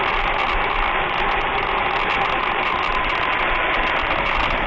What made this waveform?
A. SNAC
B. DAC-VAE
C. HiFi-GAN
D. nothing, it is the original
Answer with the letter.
D